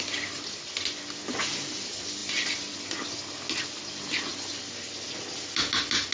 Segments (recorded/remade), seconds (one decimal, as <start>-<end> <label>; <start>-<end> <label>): 0.0-6.1 recorded